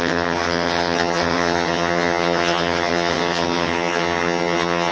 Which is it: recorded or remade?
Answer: remade